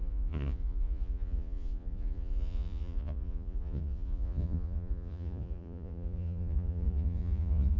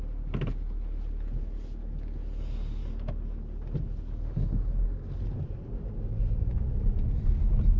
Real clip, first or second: second